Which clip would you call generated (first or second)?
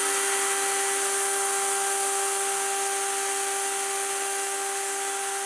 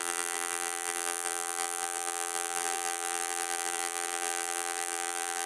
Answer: second